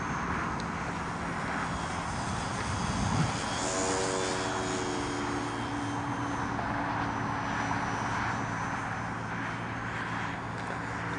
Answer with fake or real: real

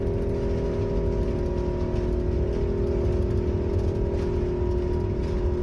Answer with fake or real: real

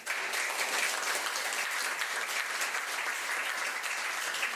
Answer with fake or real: real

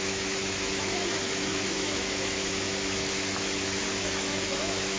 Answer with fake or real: fake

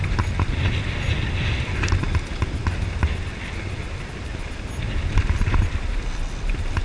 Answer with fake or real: real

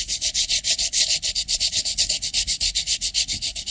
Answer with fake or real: fake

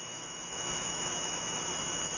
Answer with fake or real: fake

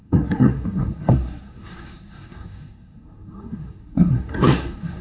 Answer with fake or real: fake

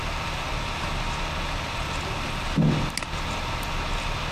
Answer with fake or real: real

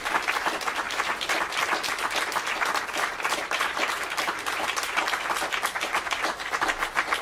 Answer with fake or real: real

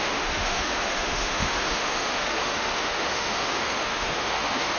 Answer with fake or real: fake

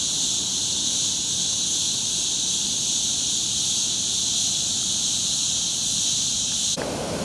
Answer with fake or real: fake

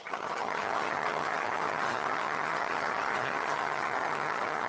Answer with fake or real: fake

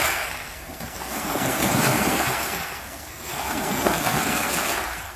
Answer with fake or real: fake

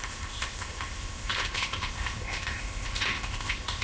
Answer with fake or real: fake